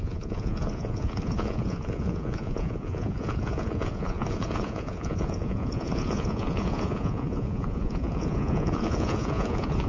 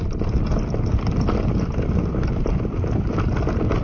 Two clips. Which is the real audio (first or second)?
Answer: second